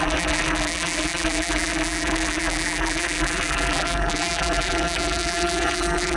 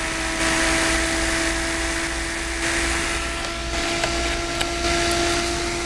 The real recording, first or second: second